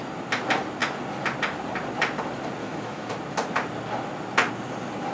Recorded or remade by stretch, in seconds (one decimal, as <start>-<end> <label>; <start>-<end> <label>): 0.0-2.6 recorded; 2.6-3.1 remade; 3.1-5.1 recorded